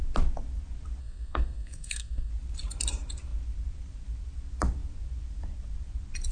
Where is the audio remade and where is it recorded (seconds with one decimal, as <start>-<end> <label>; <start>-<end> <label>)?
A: 0.0-1.0 recorded; 1.0-2.3 remade; 2.3-6.3 recorded